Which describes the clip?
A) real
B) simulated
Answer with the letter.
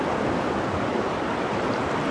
B